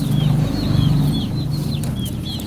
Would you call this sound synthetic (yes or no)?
yes